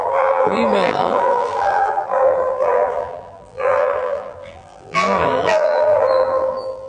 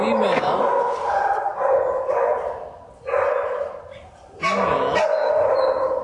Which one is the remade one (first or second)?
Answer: first